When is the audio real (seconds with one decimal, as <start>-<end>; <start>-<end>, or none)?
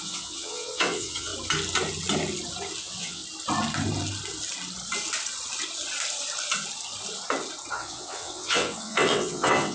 1.3-2.8; 3.2-7.7